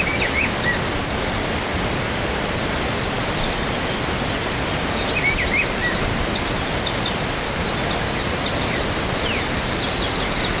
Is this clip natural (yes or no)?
yes